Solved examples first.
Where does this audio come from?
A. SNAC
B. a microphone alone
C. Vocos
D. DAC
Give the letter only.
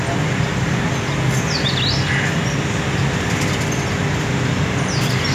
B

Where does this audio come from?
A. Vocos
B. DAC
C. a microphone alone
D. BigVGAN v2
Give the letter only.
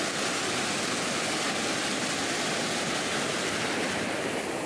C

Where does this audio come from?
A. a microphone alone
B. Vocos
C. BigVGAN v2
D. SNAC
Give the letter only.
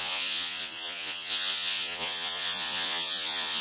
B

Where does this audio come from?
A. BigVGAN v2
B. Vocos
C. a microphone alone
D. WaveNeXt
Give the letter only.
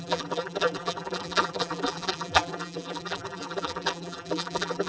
A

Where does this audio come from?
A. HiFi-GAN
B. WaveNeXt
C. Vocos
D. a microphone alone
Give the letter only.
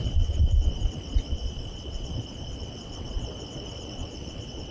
B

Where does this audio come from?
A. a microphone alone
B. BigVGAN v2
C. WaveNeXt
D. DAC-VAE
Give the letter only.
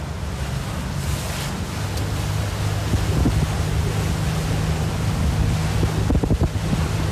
A